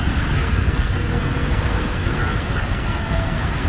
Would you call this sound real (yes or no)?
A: no